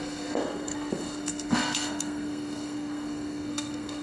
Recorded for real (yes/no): no